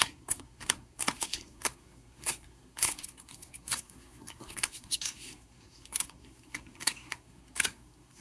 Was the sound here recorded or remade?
remade